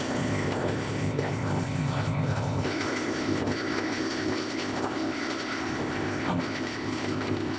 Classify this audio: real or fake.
fake